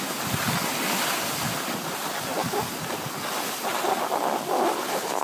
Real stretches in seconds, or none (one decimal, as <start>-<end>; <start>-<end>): 0.0-5.2